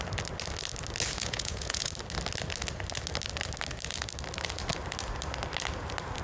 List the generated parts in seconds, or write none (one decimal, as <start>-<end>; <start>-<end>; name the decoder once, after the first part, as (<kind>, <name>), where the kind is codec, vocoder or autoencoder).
1.2-1.9 (vocoder, Vocos)